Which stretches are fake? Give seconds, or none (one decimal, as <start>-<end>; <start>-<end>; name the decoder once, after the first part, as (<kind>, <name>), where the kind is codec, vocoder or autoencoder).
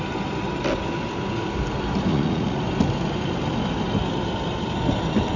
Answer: 2.1-2.6 (vocoder, Vocos)